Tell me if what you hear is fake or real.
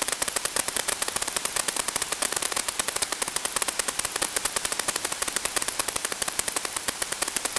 fake